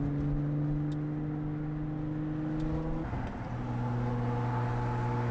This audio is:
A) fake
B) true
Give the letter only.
B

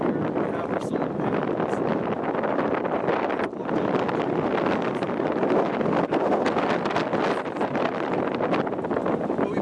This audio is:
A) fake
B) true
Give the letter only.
B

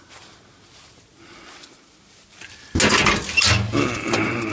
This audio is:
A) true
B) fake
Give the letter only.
A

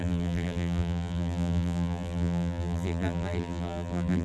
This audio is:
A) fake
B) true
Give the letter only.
A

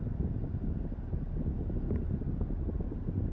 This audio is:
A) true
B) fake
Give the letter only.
A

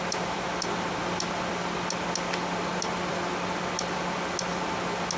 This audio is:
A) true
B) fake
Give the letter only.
A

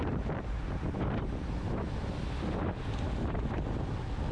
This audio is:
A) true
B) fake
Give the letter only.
A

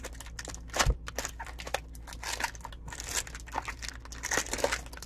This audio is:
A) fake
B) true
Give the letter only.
B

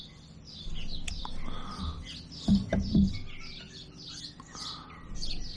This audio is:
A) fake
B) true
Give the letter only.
B